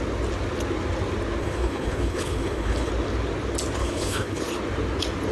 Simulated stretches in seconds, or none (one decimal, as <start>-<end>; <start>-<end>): 1.4-2.9; 3.8-4.4